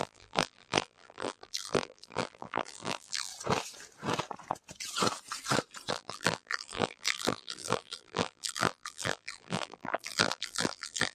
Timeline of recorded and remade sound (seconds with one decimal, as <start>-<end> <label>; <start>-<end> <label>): 0.0-3.3 remade; 3.3-5.9 recorded; 5.9-11.1 remade